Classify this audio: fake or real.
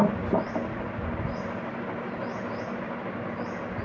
real